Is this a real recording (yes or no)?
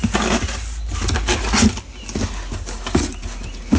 yes